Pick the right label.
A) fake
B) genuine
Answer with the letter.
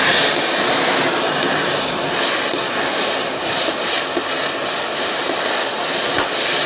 B